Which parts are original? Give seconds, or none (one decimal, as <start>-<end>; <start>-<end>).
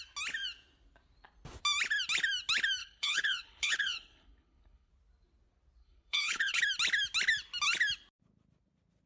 0.0-2.8; 4.9-5.8; 6.6-9.1